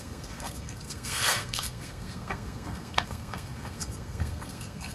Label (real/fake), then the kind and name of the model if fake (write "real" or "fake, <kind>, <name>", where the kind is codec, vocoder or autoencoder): fake, codec, SNAC